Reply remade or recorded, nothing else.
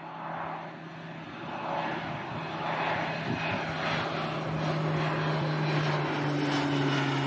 recorded